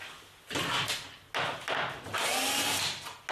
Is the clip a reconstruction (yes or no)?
no